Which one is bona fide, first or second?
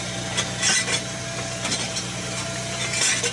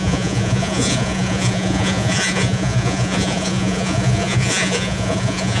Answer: first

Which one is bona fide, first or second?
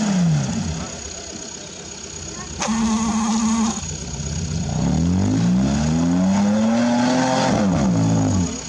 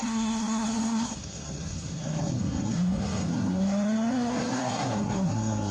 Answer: first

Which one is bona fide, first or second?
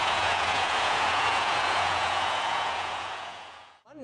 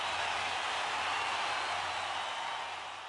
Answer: second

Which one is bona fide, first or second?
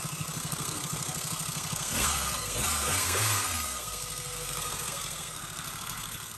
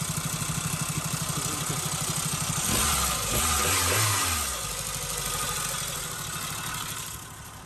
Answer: second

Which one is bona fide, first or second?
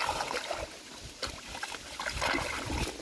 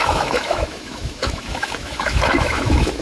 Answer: first